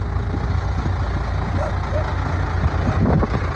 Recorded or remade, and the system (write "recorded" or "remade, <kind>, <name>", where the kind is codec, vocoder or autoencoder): recorded